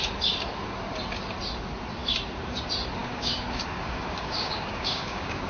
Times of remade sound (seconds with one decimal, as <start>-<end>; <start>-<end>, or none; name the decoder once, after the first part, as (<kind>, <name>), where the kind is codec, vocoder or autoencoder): 3.0-5.5 (codec, DAC)